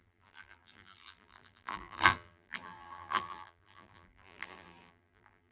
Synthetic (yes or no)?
yes